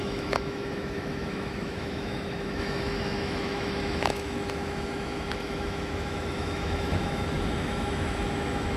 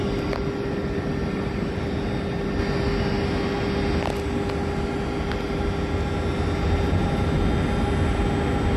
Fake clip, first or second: first